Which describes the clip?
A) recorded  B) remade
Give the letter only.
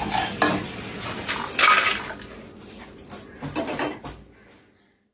A